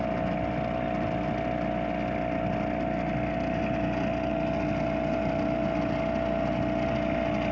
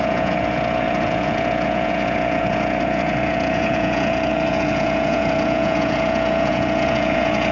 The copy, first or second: second